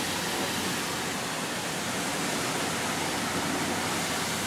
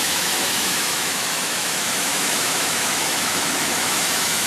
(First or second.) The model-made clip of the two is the second